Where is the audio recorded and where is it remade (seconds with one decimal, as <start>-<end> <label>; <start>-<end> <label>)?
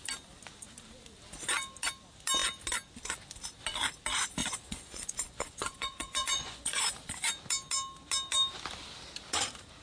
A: 0.0-4.4 recorded; 4.4-7.3 remade; 7.3-9.8 recorded